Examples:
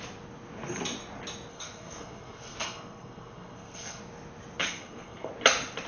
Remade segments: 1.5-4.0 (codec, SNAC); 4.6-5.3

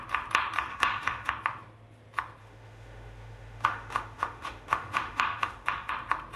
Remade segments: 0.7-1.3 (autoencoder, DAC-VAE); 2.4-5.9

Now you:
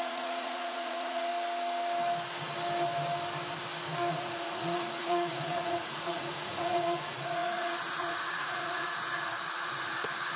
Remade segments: 0.0-1.3 (vocoder, Vocos); 4.1-10.4